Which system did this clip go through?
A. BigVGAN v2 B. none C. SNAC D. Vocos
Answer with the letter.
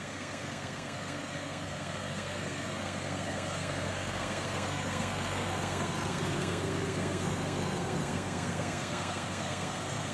C